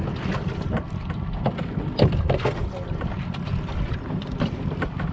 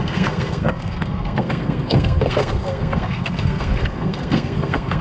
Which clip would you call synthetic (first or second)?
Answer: second